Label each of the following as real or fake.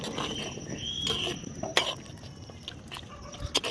real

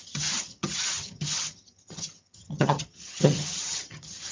fake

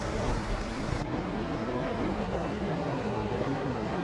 fake